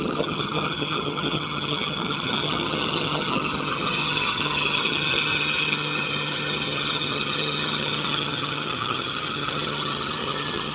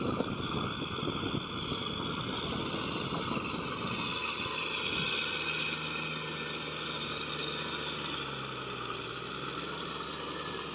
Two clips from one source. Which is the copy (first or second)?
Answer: first